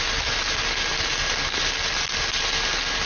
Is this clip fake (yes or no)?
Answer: no